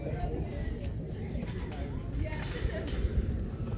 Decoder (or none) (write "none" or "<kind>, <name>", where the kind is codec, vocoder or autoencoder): vocoder, BigVGAN v2